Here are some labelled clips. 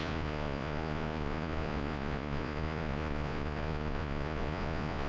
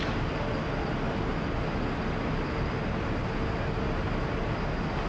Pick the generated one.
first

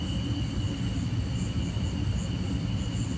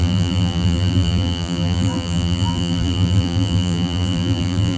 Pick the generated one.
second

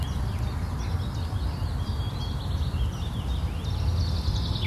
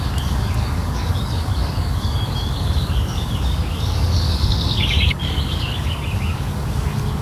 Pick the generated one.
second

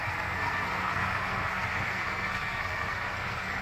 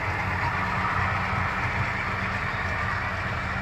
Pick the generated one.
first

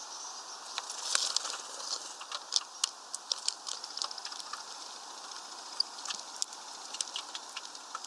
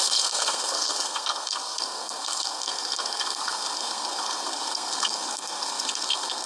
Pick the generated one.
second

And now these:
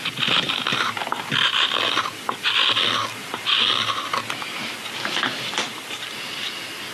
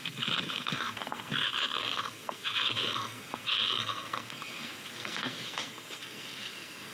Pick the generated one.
second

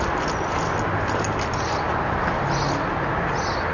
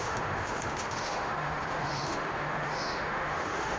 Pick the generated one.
second